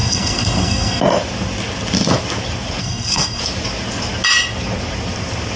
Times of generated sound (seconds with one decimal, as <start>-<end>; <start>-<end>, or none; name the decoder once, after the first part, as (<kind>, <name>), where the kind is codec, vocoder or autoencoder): 0.0-1.0 (codec, SNAC); 2.8-3.4